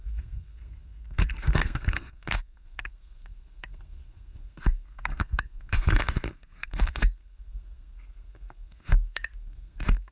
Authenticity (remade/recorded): remade